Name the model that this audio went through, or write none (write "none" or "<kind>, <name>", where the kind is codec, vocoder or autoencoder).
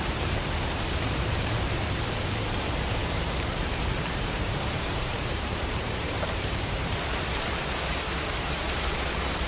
vocoder, BigVGAN v2